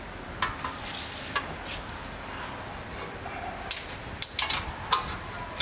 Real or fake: real